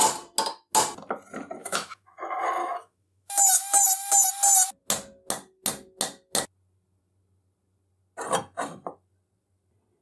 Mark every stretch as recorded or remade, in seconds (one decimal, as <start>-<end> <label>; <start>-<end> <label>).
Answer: 0.0-1.6 recorded; 1.6-2.2 remade; 2.2-2.6 recorded; 2.6-4.3 remade; 4.3-10.0 recorded